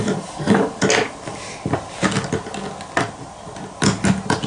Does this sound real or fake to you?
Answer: real